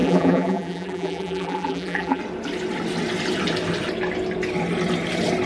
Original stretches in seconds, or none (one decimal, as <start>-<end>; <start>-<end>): 2.2-5.5